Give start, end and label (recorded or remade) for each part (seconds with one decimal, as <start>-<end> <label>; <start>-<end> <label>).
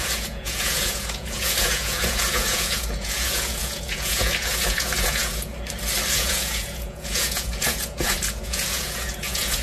0.0-5.5 remade; 5.5-6.1 recorded; 6.1-9.6 remade